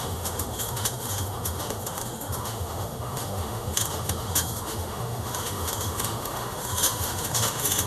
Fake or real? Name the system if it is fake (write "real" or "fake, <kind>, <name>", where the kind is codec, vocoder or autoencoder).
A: fake, autoencoder, DAC-VAE